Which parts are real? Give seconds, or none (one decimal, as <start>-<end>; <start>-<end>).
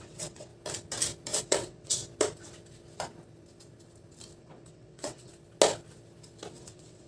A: 0.5-1.4; 2.0-4.4; 5.3-6.5